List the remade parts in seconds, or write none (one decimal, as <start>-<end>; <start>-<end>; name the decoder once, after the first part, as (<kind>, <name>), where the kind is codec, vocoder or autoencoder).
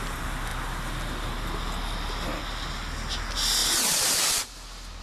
none